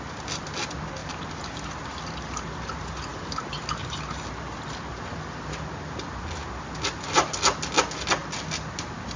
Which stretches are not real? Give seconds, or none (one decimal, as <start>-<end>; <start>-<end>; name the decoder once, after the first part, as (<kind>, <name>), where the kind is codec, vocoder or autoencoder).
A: 1.0-1.8 (vocoder, BigVGAN v2)